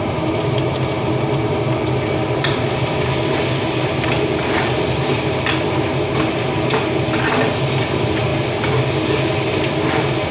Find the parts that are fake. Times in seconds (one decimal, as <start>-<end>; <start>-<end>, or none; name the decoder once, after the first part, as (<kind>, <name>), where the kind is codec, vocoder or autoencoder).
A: none